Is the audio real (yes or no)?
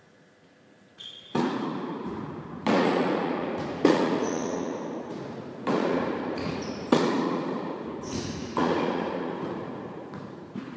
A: no